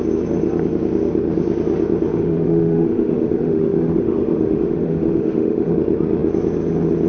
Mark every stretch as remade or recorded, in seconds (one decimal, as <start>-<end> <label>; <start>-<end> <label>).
0.0-2.1 recorded; 2.1-5.7 remade; 5.7-7.1 recorded

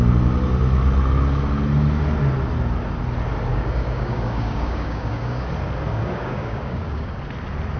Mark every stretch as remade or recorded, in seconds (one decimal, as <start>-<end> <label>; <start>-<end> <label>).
0.0-3.5 recorded; 3.5-5.5 remade; 5.5-5.9 recorded; 5.9-7.2 remade; 7.2-7.8 recorded

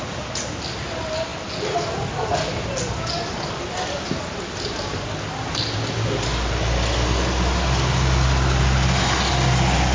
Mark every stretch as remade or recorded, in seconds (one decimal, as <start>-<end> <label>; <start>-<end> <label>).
0.0-9.9 recorded

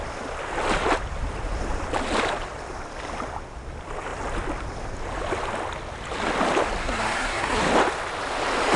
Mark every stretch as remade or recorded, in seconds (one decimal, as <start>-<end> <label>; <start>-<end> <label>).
0.0-6.8 recorded; 6.8-7.6 remade; 7.6-8.8 recorded

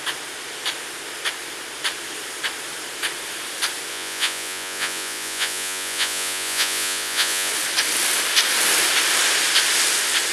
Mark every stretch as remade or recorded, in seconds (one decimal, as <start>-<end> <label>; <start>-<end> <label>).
0.0-3.9 recorded; 3.9-7.5 remade; 7.5-10.3 recorded

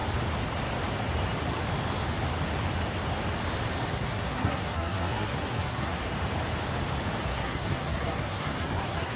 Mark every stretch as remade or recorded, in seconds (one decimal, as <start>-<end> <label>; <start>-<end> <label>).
0.0-3.9 recorded; 3.9-6.0 remade; 6.0-7.3 recorded; 7.3-9.2 remade

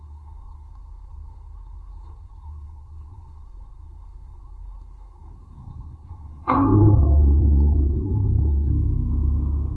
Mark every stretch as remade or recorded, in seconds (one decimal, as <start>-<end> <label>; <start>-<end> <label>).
0.0-8.7 remade; 8.7-9.8 recorded